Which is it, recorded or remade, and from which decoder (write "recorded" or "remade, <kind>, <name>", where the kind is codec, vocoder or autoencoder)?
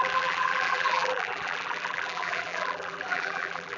remade, vocoder, BigVGAN v2